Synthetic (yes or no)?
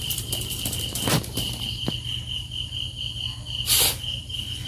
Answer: no